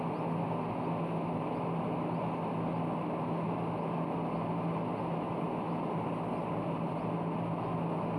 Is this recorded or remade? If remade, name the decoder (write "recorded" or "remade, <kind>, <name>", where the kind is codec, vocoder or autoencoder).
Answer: recorded